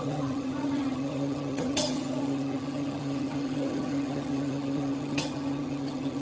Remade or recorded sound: remade